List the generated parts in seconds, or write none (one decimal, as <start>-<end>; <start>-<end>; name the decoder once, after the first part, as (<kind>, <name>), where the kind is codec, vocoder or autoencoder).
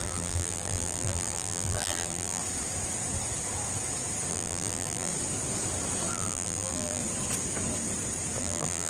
0.0-2.4 (vocoder, BigVGAN v2); 4.3-5.1; 6.1-7.0; 8.4-8.9